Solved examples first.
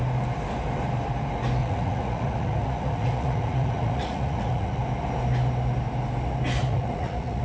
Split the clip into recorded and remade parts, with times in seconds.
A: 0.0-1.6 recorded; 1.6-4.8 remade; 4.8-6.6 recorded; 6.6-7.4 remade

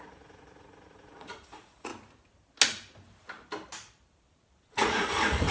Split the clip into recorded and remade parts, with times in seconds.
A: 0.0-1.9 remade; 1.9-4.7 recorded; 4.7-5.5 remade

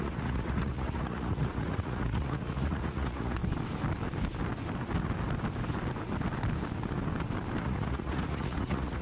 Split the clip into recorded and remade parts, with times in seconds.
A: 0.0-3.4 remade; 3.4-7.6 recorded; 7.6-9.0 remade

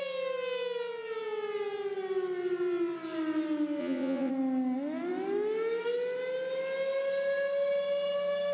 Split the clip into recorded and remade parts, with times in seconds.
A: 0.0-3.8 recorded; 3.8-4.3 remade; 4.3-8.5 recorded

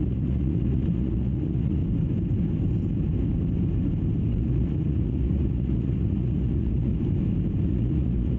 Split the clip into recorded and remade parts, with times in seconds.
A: 0.0-1.8 remade; 1.8-4.3 recorded; 4.3-6.9 remade; 6.9-7.7 recorded; 7.7-8.4 remade